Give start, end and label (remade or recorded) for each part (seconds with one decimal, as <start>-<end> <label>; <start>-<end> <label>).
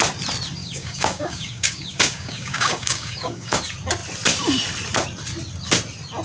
0.0-0.6 recorded; 0.6-3.6 remade; 3.6-6.2 recorded